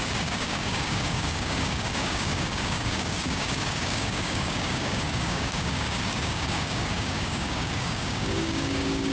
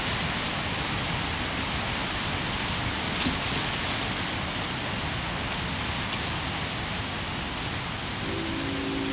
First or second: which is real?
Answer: second